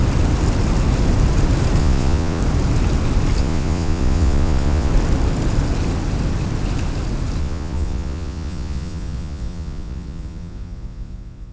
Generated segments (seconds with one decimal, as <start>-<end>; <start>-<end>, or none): 1.8-2.4; 3.4-4.9; 7.4-11.5

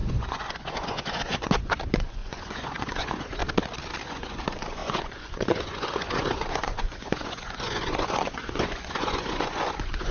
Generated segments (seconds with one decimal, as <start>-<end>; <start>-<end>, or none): 0.0-3.4; 4.1-10.1

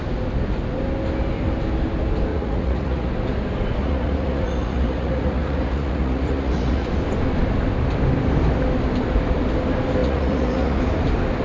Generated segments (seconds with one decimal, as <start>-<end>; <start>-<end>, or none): 2.3-3.1; 3.8-6.9; 10.0-10.8

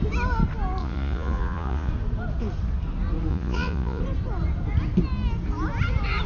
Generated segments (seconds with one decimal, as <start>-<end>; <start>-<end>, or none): 0.8-1.9; 3.3-4.0